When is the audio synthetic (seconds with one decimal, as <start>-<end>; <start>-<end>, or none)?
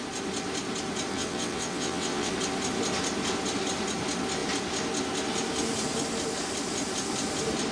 1.1-2.3